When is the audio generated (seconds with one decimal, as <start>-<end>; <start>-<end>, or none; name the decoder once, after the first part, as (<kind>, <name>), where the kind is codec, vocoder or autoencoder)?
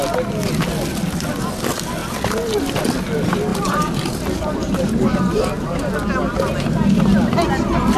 3.5-5.9 (vocoder, BigVGAN v2)